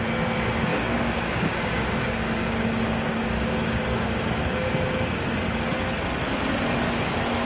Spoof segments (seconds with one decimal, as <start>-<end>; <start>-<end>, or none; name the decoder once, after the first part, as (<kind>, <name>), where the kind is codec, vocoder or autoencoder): 0.7-4.7 (codec, DAC)